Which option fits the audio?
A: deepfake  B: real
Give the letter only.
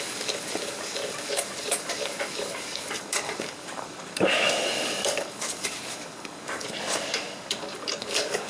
A